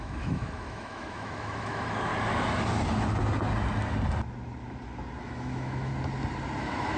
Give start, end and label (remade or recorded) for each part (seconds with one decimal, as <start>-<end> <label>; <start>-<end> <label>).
0.0-2.1 remade; 2.1-5.2 recorded; 5.2-5.9 remade; 5.9-6.6 recorded; 6.6-7.0 remade